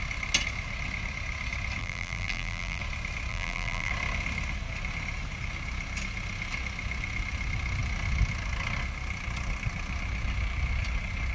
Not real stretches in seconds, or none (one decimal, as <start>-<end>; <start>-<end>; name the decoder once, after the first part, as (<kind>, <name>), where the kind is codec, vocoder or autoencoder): 1.8-2.8 (vocoder, BigVGAN v2); 3.3-3.9